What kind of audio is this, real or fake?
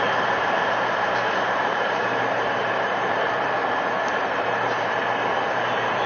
fake